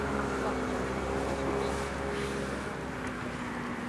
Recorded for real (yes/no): yes